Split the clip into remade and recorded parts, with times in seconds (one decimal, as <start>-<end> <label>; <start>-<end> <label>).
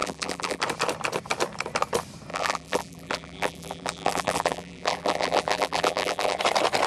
0.0-0.6 remade; 0.6-2.3 recorded; 2.3-6.4 remade; 6.4-6.9 recorded